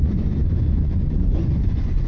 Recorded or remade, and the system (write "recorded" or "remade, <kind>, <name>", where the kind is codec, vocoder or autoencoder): remade, vocoder, Vocos